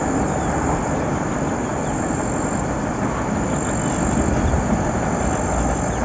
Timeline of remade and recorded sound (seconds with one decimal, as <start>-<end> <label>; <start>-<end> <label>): 0.0-6.0 recorded